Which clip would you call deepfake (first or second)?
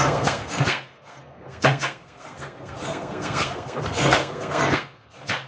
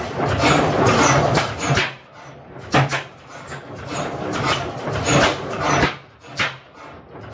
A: first